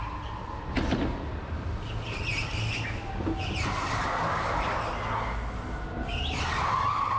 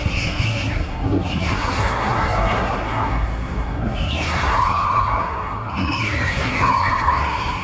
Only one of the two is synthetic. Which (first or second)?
second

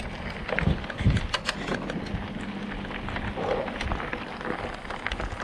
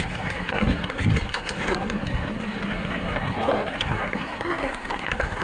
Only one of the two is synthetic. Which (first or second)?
second